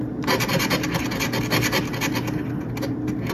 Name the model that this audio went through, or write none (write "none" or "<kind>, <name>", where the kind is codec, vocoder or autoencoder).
none